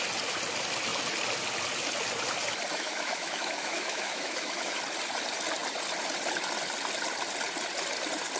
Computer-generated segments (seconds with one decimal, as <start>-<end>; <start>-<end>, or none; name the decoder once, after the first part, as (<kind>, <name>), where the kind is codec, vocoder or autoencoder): 2.7-4.8 (autoencoder, DAC-VAE)

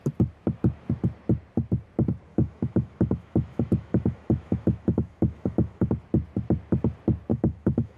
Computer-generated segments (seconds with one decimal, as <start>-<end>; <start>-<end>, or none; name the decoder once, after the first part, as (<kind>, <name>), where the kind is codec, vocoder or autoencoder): 2.3-5.9 (autoencoder, DAC-VAE); 7.3-8.0

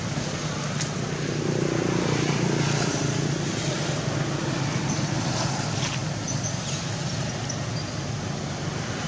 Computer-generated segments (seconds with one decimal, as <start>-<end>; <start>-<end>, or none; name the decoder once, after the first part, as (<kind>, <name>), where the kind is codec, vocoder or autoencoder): none

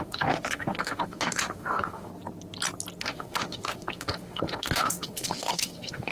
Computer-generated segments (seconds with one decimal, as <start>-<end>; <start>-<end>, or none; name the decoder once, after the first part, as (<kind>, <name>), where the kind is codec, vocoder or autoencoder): 0.0-2.1 (autoencoder, DAC-VAE); 3.0-6.1

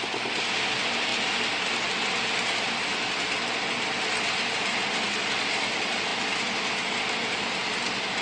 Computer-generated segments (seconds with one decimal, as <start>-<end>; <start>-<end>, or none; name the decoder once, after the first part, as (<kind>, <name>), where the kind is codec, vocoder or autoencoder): none

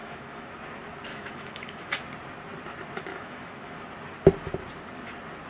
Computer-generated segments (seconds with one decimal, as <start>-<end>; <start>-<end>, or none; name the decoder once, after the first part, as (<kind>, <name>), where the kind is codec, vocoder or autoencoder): 0.0-0.5 (autoencoder, DAC-VAE); 1.1-1.9; 3.1-3.7

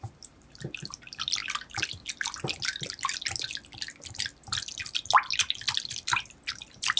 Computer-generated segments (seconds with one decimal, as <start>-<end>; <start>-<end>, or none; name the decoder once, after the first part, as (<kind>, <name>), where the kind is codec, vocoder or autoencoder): none

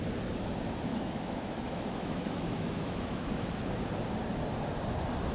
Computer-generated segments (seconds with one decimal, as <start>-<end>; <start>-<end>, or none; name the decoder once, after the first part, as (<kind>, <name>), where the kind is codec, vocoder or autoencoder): 0.9-3.7 (autoencoder, DAC-VAE)